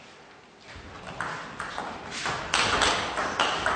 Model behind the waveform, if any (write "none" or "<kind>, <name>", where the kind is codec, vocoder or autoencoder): none